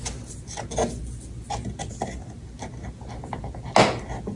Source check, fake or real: real